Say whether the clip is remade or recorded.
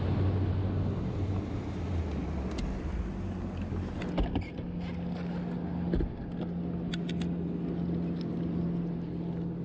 recorded